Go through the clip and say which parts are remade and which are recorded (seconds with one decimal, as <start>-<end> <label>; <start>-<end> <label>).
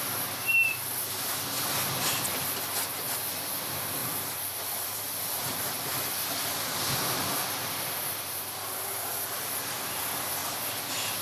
0.0-4.0 recorded; 4.0-6.8 remade; 6.8-11.2 recorded